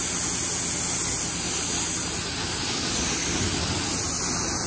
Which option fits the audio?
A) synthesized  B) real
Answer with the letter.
B